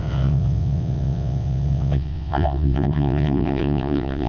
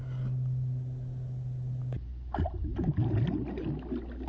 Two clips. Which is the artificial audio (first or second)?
first